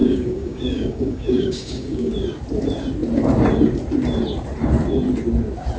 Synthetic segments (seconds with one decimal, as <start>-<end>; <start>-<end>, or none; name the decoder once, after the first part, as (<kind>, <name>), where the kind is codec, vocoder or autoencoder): 0.0-2.1 (codec, DAC)